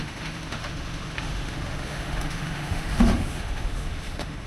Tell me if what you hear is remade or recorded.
remade